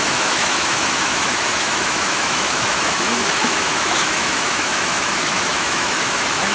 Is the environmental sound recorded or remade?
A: remade